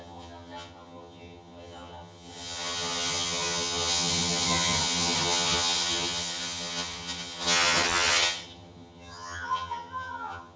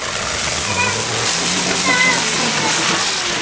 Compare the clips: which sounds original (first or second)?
second